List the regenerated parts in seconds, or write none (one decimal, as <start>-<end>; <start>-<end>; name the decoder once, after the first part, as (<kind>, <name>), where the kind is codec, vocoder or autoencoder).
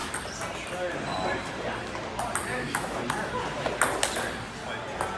2.5-3.0 (autoencoder, DAC-VAE)